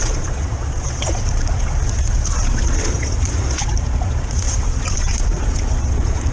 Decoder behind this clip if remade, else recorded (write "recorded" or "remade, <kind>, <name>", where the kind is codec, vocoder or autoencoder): remade, vocoder, Vocos